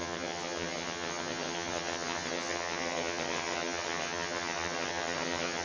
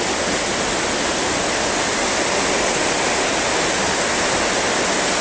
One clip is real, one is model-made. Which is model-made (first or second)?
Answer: first